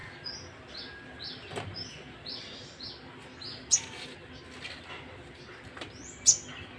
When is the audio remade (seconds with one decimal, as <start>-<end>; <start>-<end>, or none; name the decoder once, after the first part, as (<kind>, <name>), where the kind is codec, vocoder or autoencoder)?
none